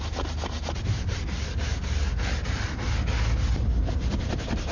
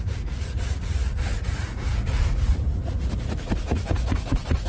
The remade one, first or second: second